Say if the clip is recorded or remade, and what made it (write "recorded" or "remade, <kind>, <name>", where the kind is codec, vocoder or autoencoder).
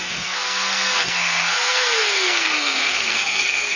remade, codec, SNAC